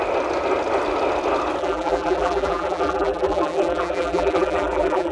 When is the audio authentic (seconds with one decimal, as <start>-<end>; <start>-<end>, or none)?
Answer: 0.0-1.6